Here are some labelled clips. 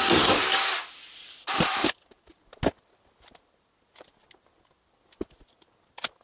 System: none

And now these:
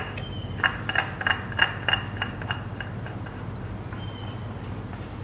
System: none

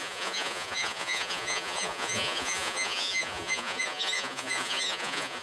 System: vocoder, Vocos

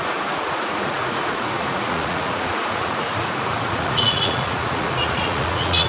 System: vocoder, Vocos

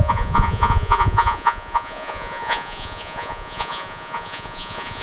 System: vocoder, Vocos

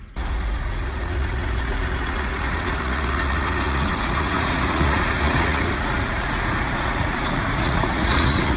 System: vocoder, Vocos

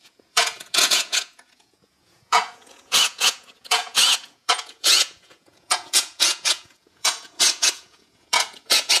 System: vocoder, Vocos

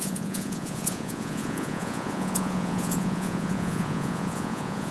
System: vocoder, Vocos